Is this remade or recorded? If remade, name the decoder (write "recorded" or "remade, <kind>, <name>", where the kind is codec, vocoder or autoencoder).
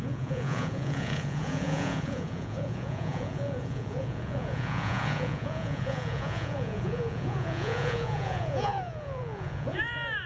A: remade, vocoder, Vocos